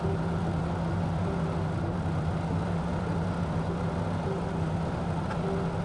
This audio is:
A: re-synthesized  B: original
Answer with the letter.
B